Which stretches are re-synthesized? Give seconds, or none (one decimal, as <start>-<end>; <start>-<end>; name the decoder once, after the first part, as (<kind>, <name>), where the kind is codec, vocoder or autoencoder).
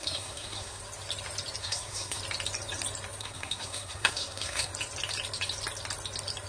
0.0-0.8 (codec, SNAC); 1.6-2.2; 3.2-4.7